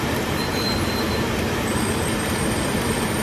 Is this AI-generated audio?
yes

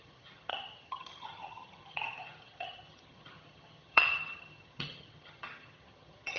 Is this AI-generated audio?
yes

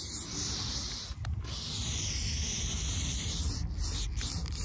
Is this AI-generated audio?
no